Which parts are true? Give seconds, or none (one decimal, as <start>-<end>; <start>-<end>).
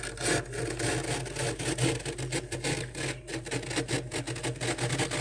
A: 0.0-5.2